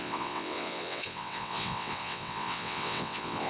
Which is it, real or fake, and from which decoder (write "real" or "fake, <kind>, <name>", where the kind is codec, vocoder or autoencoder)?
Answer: fake, vocoder, WaveNeXt